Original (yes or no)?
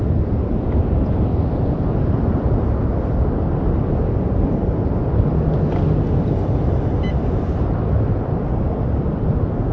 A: yes